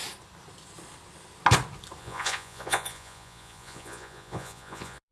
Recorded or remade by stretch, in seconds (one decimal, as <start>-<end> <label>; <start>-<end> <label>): 0.0-2.0 recorded; 2.0-5.1 remade